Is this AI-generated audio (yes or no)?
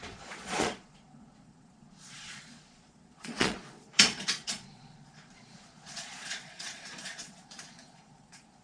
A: yes